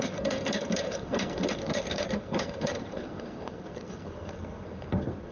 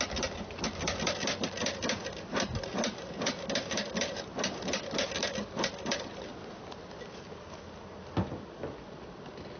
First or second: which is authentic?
second